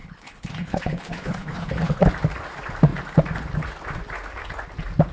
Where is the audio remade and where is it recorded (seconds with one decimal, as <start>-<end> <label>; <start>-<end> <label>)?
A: 0.0-2.0 remade; 2.0-5.1 recorded